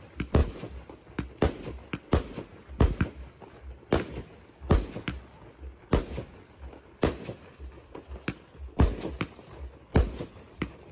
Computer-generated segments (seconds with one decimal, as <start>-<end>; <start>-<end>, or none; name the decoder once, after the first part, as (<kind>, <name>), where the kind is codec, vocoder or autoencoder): none